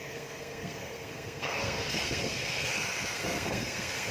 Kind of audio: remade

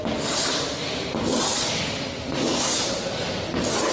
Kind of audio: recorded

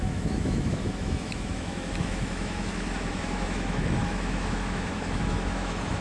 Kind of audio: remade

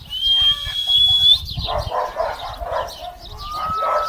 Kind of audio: recorded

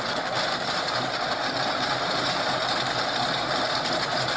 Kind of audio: recorded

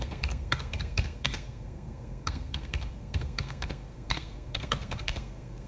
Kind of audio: remade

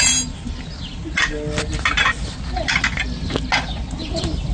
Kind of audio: recorded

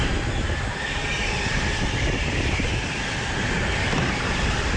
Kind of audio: recorded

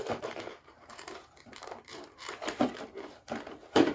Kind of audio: remade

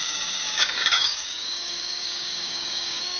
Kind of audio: remade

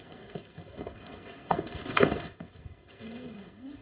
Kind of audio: remade